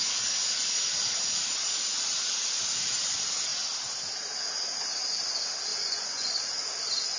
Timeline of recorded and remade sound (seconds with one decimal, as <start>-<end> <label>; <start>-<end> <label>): 0.0-5.7 recorded; 5.7-6.3 remade; 6.3-7.2 recorded

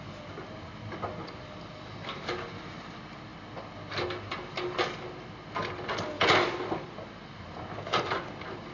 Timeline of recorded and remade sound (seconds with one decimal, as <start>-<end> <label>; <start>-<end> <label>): 0.0-8.7 recorded

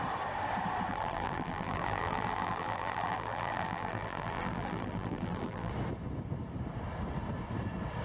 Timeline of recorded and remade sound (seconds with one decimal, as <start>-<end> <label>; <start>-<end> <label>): 0.0-0.9 recorded; 0.9-5.7 remade; 5.7-8.0 recorded

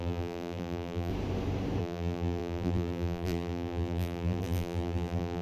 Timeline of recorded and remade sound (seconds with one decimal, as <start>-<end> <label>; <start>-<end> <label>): 0.0-1.1 remade; 1.1-1.8 recorded; 1.8-5.4 remade

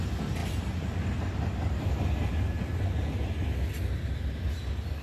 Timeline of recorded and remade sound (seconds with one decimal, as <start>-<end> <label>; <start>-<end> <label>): 0.0-5.0 recorded